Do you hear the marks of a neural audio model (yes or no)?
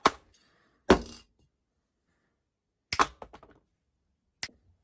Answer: no